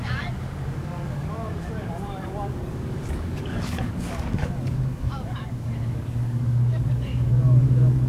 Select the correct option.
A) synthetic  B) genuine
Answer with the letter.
A